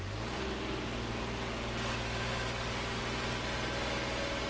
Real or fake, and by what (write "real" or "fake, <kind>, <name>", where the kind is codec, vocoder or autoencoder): real